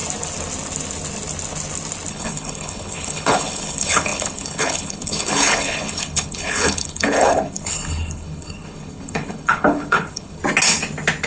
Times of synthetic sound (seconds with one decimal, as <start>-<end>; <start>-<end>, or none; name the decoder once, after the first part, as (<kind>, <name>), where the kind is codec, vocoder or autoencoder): 2.1-10.4 (codec, HILCodec)